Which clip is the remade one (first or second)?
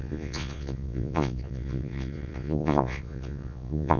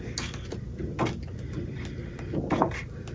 first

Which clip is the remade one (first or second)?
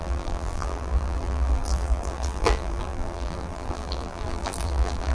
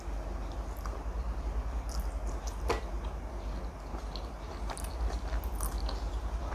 first